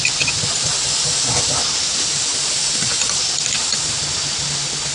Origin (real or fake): real